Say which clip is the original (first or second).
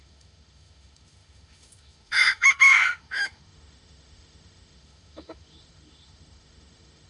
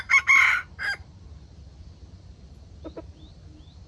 second